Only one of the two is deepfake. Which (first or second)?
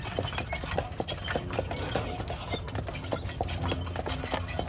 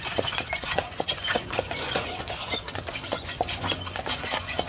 second